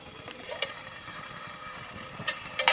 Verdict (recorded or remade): remade